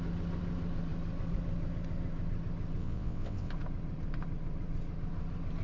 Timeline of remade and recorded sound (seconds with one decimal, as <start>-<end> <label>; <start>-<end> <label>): 0.0-2.8 recorded; 2.8-3.5 remade; 3.5-5.6 recorded